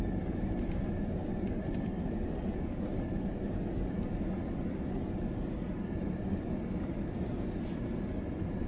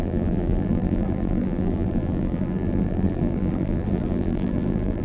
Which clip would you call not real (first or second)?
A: second